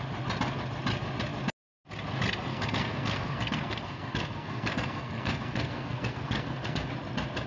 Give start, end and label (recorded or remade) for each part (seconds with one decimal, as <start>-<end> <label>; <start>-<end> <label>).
0.0-2.5 recorded; 2.5-6.9 remade; 6.9-7.5 recorded